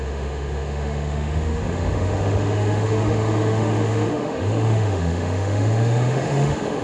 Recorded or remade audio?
remade